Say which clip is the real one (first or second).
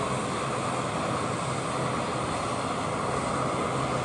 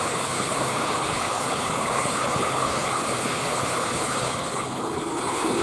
first